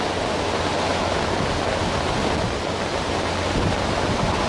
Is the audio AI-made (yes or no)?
no